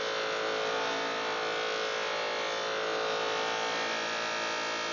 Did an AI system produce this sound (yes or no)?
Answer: no